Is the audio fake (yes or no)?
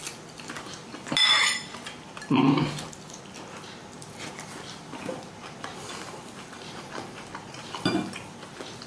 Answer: no